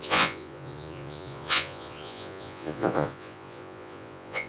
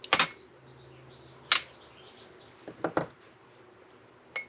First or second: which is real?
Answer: second